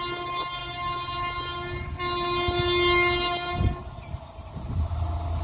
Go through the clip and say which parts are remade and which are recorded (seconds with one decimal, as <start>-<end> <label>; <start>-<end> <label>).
0.0-5.4 recorded